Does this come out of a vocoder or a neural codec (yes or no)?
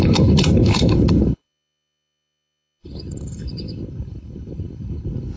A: yes